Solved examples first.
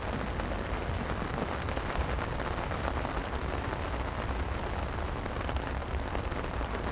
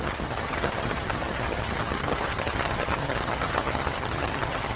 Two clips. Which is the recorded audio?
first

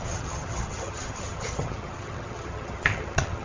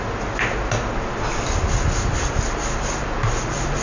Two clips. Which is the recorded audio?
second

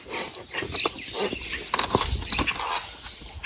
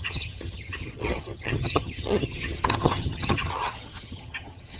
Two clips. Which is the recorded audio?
first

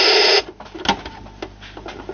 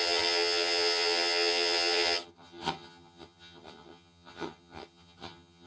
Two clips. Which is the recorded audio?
first